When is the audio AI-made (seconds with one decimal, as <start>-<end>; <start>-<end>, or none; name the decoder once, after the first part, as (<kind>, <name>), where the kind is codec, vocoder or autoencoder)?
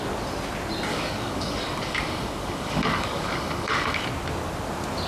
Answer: 0.9-4.0 (codec, DAC)